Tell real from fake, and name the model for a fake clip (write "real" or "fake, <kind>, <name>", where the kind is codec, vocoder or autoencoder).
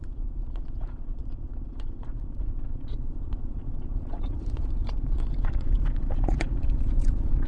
fake, vocoder, Vocos